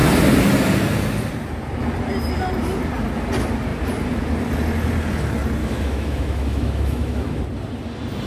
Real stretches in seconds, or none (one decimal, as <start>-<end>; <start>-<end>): 0.0-5.6; 7.4-8.3